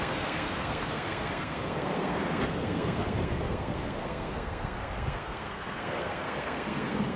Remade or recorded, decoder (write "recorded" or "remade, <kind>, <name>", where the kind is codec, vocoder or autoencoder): remade, codec, SNAC